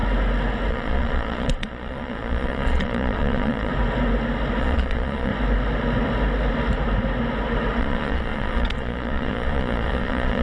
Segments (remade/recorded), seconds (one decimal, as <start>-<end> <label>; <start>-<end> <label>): 0.0-0.7 recorded; 0.7-3.7 remade; 3.7-4.6 recorded; 4.6-5.3 remade; 5.3-7.8 recorded; 7.8-10.4 remade